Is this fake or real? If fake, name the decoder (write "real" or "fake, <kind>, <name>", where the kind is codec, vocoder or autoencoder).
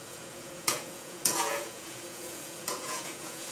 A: fake, vocoder, Vocos